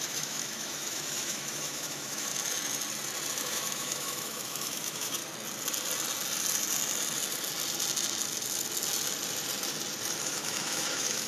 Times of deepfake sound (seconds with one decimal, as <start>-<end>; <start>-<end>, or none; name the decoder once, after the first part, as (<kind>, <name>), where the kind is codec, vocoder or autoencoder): 0.0-2.3 (autoencoder, DAC-VAE); 3.3-5.2; 10.2-11.3